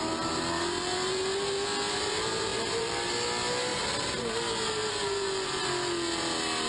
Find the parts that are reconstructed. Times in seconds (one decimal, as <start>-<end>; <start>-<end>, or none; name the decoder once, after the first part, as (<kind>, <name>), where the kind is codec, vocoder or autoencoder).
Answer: 2.5-3.0 (vocoder, BigVGAN v2)